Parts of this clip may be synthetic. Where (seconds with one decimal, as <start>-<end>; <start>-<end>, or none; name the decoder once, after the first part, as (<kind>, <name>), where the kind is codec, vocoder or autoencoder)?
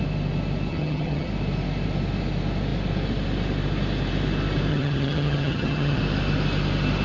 0.7-1.3 (vocoder, HiFi-GAN); 4.7-6.0